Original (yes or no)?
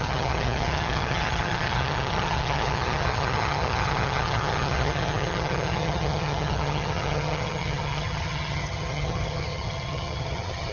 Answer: no